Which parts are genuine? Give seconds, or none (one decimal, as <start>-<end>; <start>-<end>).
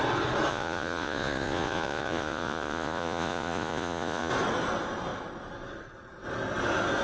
0.0-0.5; 4.3-7.0